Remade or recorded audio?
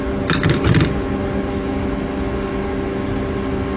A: recorded